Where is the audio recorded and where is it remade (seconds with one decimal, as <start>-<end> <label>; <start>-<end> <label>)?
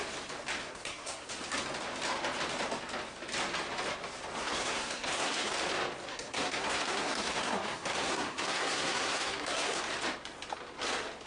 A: 0.0-0.6 recorded; 0.6-1.3 remade; 1.3-4.4 recorded; 4.4-5.5 remade; 5.5-6.1 recorded; 6.1-9.8 remade; 9.8-11.3 recorded